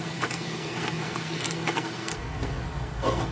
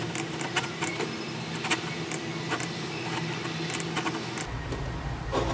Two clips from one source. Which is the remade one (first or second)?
first